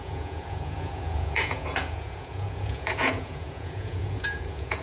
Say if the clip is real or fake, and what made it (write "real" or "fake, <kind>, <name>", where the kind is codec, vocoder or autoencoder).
fake, vocoder, Vocos